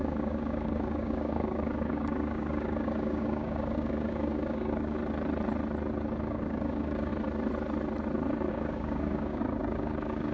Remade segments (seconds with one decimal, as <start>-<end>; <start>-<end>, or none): 0.0-5.0; 6.2-7.1; 8.5-10.3